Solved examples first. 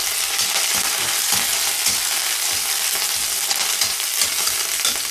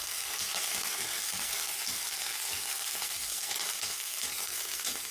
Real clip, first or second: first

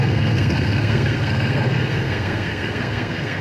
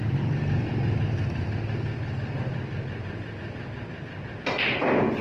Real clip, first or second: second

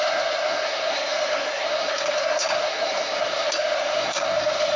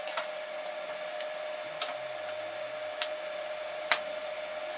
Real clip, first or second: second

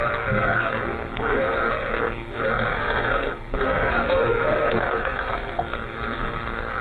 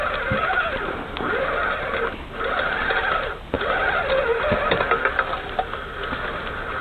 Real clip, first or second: second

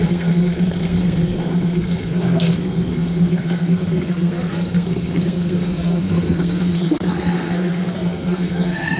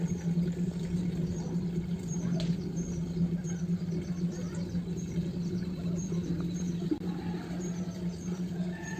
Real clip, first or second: second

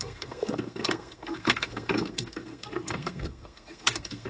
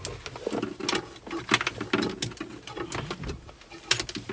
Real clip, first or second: second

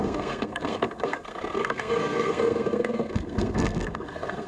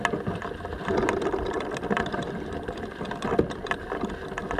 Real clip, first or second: second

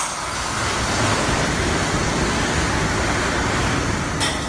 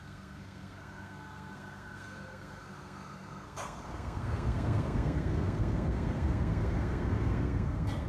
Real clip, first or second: first